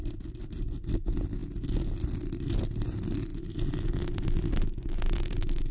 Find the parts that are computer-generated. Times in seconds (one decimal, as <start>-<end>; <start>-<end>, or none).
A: none